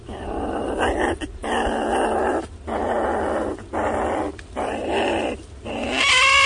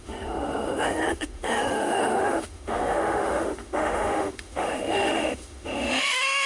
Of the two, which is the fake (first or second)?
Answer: second